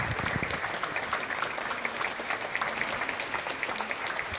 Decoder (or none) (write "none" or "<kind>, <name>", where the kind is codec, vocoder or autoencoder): none